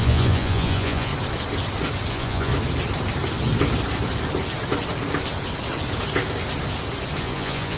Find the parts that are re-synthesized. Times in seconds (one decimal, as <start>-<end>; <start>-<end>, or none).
0.0-1.1; 2.1-2.5; 7.2-7.8